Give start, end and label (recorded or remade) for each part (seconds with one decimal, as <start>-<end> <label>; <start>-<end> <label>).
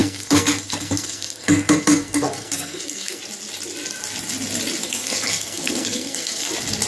0.0-3.2 remade; 3.2-4.8 recorded; 4.8-6.5 remade; 6.5-6.9 recorded